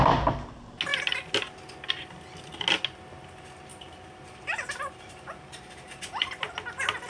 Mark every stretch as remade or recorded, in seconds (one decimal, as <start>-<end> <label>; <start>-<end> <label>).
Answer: 0.0-3.7 recorded; 3.7-6.3 remade; 6.3-7.1 recorded